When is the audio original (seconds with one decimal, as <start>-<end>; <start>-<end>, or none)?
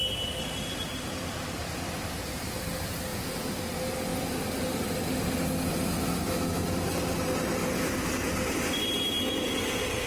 0.0-3.1; 3.6-10.1